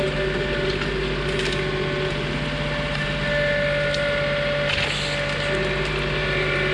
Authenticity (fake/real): real